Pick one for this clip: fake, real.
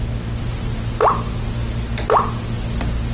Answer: real